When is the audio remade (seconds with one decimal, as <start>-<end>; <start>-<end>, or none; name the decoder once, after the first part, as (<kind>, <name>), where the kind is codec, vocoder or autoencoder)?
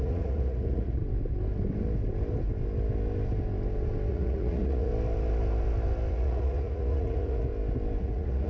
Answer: 0.0-1.0 (vocoder, Vocos); 4.1-4.9; 6.1-7.5; 8.0-8.5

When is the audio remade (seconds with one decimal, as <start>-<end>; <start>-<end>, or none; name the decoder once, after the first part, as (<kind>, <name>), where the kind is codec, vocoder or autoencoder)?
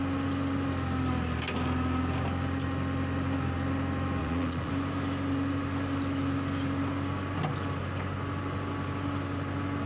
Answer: 4.2-4.7 (vocoder, Vocos)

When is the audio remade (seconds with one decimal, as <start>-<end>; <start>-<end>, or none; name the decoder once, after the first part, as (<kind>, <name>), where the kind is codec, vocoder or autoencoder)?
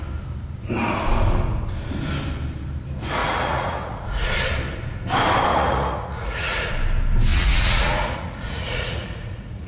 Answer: 3.2-4.3 (vocoder, Vocos); 5.5-6.7; 7.3-9.7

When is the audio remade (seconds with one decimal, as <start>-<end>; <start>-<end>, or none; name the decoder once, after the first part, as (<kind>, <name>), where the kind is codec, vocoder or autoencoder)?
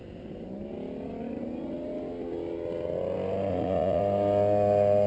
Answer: 3.5-4.0 (vocoder, Vocos)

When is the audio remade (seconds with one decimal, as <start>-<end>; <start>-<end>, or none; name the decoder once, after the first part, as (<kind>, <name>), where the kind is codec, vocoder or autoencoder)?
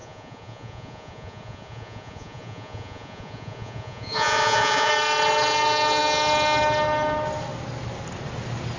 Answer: 0.0-4.9 (vocoder, Vocos)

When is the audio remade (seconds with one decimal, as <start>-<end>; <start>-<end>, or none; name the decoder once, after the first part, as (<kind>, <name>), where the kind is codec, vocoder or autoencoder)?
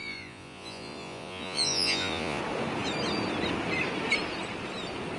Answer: 0.0-2.4 (vocoder, Vocos)